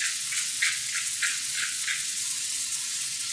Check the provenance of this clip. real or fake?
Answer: fake